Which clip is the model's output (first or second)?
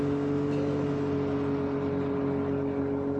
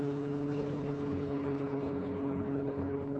second